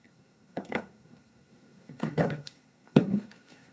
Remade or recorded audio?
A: remade